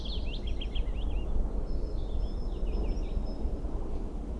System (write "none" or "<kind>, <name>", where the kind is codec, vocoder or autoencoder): none